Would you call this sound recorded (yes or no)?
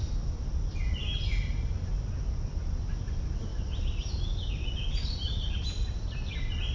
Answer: yes